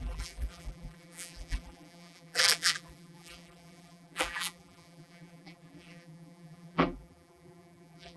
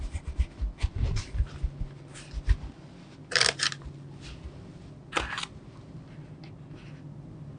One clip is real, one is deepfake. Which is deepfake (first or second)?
first